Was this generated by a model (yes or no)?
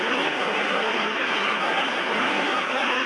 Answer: yes